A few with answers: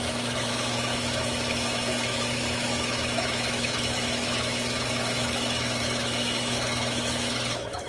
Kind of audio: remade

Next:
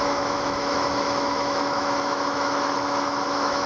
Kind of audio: remade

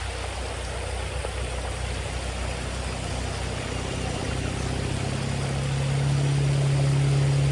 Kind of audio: recorded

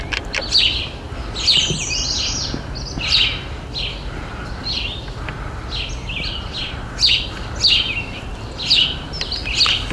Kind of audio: recorded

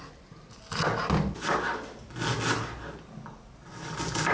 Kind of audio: recorded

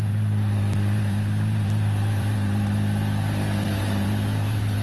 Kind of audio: remade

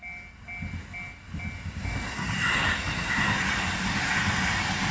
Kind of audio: recorded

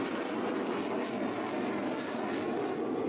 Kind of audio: recorded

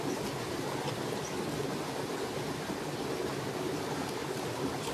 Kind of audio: recorded